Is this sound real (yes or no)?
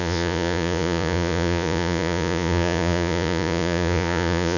no